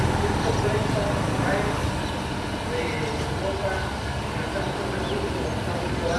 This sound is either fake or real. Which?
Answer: real